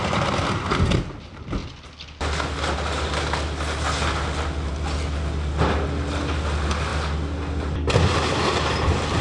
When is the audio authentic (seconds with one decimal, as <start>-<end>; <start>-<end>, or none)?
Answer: 0.0-9.2